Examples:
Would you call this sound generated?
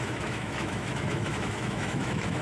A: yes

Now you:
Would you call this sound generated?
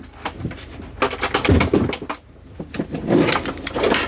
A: no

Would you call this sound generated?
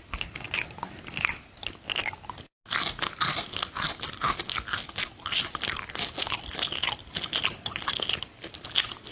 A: no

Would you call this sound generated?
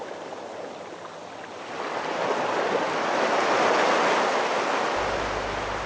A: no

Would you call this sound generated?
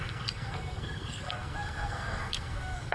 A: yes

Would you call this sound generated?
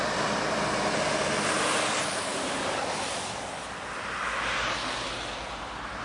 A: no